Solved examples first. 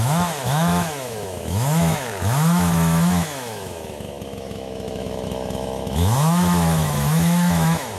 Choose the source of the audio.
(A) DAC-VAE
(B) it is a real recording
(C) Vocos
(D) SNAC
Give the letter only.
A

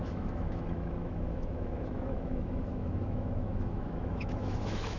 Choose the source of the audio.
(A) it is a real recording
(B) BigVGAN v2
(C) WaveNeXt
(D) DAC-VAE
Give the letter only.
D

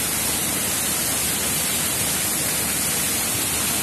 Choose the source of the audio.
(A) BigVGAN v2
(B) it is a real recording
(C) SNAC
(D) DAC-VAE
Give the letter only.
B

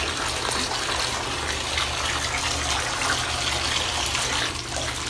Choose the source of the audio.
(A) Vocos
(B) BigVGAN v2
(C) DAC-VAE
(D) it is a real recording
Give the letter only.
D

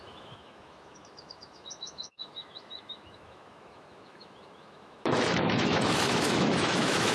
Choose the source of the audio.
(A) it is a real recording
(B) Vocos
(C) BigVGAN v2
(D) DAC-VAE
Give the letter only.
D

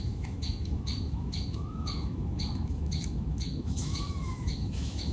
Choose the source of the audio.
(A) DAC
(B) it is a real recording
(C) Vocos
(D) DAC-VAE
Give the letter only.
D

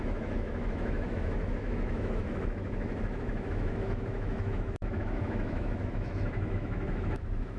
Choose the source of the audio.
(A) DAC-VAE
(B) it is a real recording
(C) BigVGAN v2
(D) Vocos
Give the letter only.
A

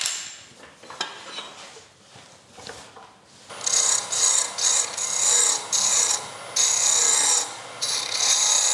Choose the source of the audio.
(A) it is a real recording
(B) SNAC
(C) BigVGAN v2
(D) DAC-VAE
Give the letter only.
A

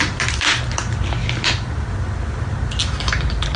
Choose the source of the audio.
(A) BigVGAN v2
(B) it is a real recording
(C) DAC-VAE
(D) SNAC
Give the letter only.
B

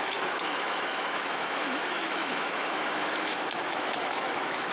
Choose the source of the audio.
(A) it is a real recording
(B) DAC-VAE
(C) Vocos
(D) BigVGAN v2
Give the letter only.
B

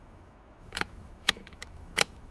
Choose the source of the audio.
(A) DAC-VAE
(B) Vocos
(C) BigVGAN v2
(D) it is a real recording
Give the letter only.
A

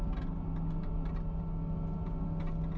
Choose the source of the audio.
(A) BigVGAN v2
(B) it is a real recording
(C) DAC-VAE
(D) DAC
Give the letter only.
B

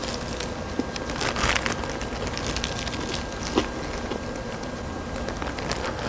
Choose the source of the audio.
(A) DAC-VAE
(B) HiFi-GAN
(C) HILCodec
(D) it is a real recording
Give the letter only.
D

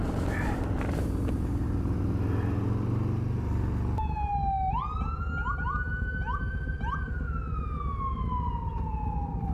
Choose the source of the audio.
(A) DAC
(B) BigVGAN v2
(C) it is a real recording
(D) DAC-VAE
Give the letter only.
C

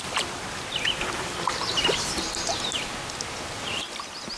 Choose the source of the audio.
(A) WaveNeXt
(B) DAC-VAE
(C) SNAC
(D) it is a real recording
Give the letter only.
D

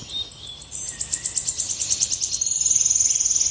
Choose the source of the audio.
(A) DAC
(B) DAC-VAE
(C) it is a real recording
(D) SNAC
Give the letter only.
C